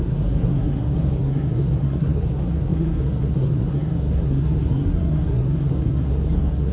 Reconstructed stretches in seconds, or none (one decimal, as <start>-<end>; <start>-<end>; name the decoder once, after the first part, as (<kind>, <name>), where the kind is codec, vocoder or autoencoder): 0.0-6.7 (codec, SNAC)